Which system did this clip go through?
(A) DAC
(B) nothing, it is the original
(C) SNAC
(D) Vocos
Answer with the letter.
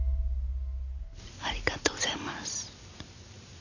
B